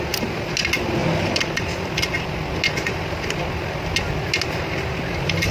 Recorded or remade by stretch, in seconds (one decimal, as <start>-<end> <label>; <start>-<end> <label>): 0.0-5.5 recorded